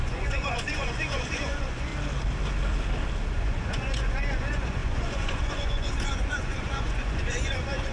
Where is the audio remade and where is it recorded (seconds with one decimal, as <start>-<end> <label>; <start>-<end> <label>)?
0.0-1.9 remade; 1.9-3.3 recorded; 3.3-7.9 remade